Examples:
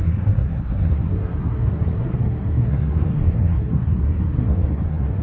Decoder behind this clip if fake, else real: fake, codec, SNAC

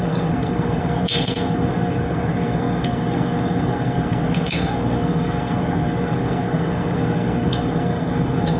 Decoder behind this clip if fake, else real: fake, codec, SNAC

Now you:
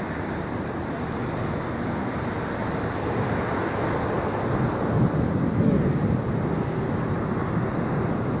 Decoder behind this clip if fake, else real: real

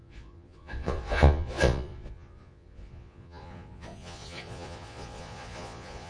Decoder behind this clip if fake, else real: fake, vocoder, Vocos